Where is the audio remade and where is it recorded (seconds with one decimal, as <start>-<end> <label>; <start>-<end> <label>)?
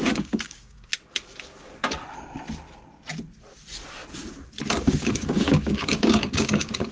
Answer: 0.0-0.9 remade; 0.9-5.0 recorded; 5.0-6.9 remade